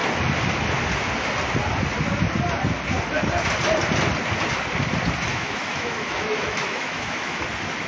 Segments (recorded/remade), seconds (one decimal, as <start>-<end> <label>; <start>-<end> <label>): 0.0-5.3 recorded; 5.3-7.4 remade; 7.4-7.9 recorded